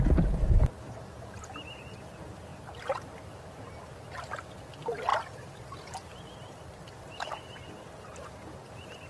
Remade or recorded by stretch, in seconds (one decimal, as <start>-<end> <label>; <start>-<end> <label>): 0.0-5.1 recorded; 5.1-7.7 remade; 7.7-9.1 recorded